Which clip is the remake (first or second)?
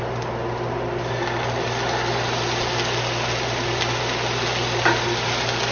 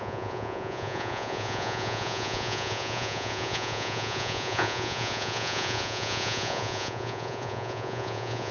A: second